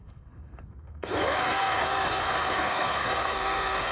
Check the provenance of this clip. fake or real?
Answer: fake